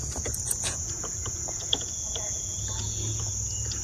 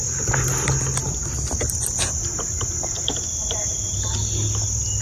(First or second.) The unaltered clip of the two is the second